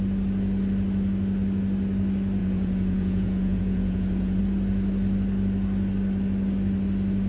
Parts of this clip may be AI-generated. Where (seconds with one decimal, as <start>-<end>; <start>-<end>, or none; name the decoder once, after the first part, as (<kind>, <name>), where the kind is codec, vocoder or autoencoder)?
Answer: 2.4-4.4 (vocoder, Vocos)